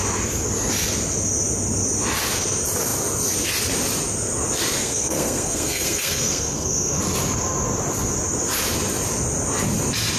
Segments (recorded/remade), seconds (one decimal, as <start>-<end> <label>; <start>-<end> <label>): 0.0-4.8 recorded; 4.8-7.0 remade; 7.0-10.2 recorded